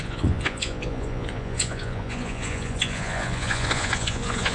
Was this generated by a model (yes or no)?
yes